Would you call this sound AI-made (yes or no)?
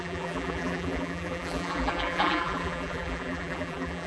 yes